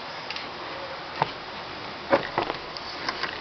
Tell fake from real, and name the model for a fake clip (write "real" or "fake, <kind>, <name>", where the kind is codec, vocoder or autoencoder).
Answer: real